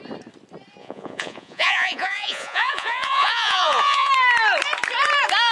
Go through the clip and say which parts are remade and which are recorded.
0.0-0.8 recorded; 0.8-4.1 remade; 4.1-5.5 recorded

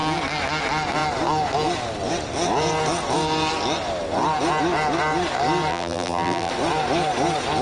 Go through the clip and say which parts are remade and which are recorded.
0.0-5.7 recorded; 5.7-6.5 remade; 6.5-7.6 recorded

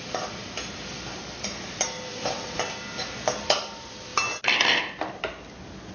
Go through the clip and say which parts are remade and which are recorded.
0.0-2.1 recorded; 2.1-2.6 remade; 2.6-5.9 recorded

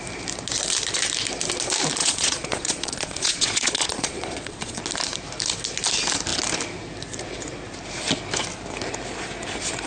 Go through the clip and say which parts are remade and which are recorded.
0.0-2.0 recorded; 2.0-4.8 remade; 4.8-9.9 recorded

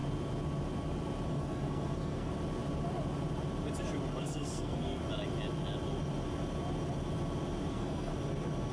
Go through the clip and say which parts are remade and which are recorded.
0.0-1.3 recorded; 1.3-2.3 remade; 2.3-4.2 recorded; 4.2-5.0 remade; 5.0-7.7 recorded; 7.7-8.1 remade; 8.1-8.7 recorded